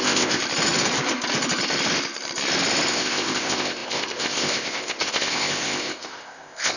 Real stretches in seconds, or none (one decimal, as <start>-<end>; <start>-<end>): 0.4-2.9